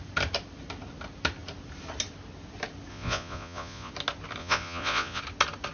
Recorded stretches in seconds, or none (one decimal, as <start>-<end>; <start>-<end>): 0.0-2.9; 3.9-4.4; 5.2-5.7